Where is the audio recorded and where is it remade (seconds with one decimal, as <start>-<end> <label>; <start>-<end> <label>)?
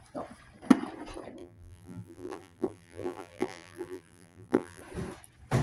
0.0-1.4 recorded; 1.4-4.8 remade; 4.8-5.6 recorded